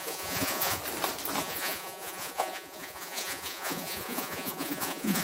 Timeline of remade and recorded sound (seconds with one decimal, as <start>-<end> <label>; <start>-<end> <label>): 0.0-0.8 remade; 0.8-1.4 recorded; 1.4-5.2 remade